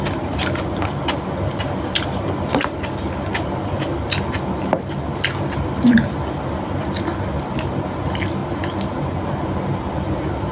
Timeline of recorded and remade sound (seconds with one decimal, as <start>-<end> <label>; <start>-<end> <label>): 0.0-10.5 recorded